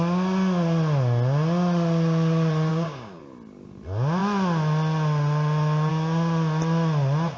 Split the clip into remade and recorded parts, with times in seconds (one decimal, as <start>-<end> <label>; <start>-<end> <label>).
0.0-2.7 recorded; 2.7-3.2 remade; 3.2-7.4 recorded